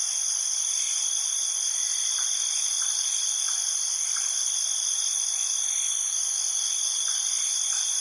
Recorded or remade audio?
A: remade